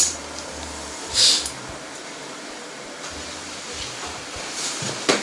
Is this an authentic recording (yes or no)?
no